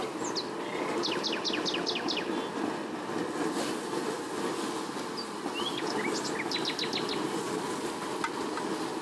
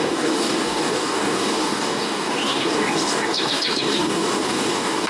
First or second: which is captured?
first